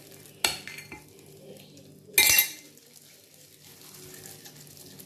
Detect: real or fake real